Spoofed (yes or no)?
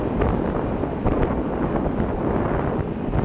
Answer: no